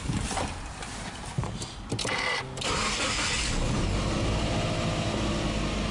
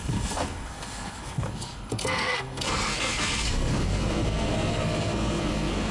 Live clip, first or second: first